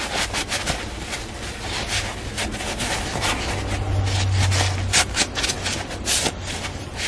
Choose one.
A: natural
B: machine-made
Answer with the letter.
A